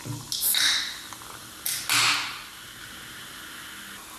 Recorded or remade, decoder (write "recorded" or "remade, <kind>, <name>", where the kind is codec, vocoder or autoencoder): recorded